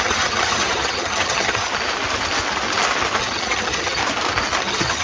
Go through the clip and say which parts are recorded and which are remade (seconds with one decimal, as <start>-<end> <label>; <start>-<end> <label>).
0.0-1.7 remade; 1.7-3.2 recorded; 3.2-4.0 remade; 4.0-4.6 recorded; 4.6-5.0 remade